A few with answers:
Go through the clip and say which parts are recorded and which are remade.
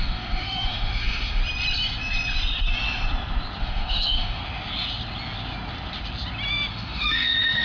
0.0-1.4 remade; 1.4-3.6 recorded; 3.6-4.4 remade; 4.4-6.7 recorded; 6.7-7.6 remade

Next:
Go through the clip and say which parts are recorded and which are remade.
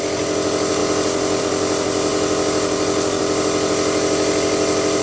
0.0-5.0 recorded